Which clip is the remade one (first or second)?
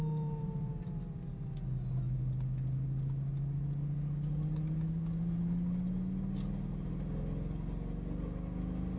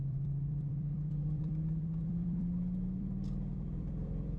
second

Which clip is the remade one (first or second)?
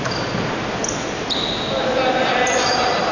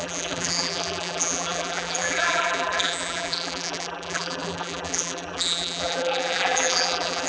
second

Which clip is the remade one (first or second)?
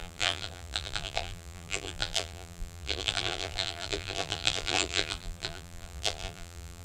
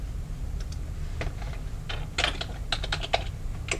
first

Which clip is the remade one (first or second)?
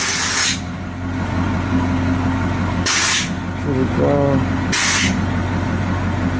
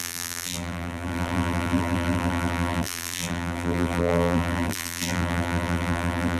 second